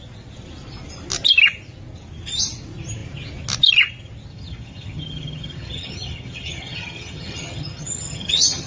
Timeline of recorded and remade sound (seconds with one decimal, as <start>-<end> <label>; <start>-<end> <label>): 0.0-4.3 recorded; 4.3-8.7 remade